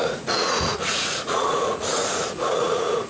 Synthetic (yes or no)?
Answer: yes